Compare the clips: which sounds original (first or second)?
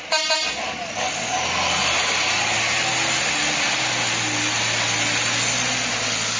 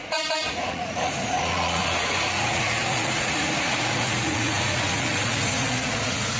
first